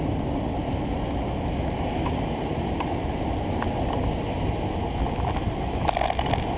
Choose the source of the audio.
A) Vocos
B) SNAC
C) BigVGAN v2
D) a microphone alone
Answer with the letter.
D